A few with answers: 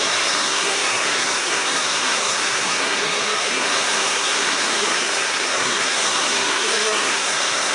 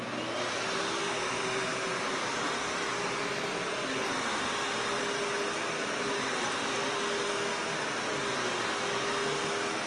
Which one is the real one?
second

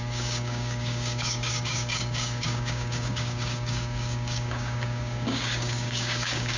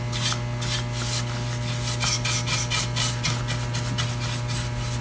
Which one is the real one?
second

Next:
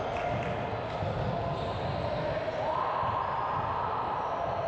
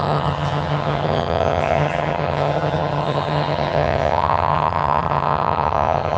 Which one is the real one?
first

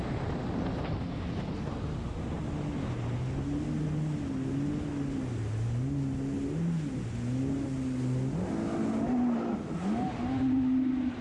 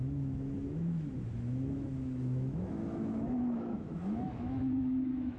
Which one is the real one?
first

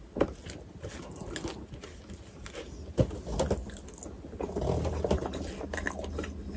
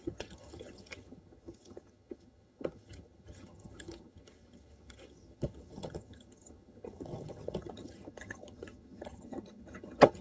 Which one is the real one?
first